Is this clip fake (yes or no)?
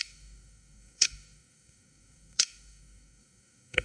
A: yes